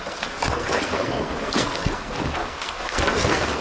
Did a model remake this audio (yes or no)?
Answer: yes